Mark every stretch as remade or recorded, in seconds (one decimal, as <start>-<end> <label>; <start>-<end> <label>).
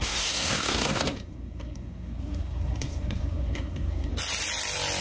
0.0-4.1 remade; 4.1-5.0 recorded